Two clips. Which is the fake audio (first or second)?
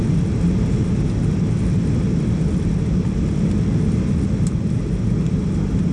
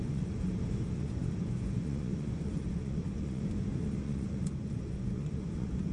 second